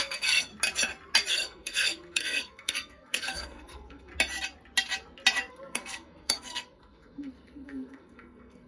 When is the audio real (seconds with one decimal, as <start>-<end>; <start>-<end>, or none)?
0.5-1.3; 4.1-5.5